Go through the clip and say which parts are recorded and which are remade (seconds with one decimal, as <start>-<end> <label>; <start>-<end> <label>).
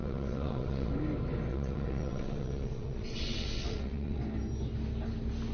0.0-0.9 remade; 0.9-1.5 recorded; 1.5-4.2 remade; 4.2-5.5 recorded